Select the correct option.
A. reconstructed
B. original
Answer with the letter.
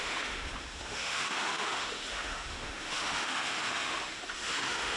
A